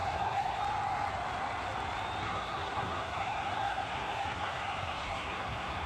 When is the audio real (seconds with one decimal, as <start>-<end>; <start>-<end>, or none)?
0.6-2.2